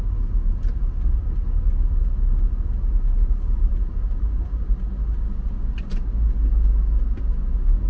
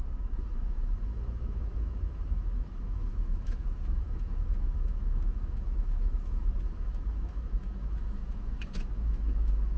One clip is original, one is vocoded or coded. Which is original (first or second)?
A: first